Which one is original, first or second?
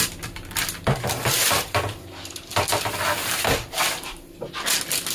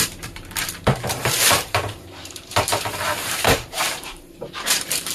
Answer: first